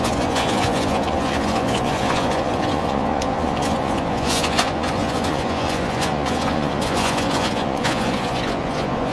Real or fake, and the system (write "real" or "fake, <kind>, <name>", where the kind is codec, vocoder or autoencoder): fake, vocoder, Vocos